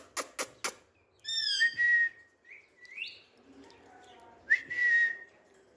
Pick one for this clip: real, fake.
real